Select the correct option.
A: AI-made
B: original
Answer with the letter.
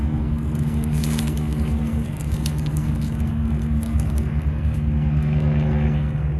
A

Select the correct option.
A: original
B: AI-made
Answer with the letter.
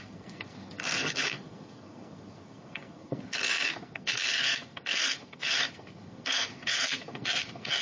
B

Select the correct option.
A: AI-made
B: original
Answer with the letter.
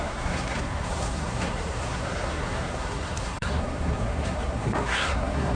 A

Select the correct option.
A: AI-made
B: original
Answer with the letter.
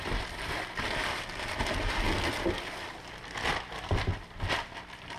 B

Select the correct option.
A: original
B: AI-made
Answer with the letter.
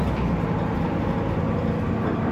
A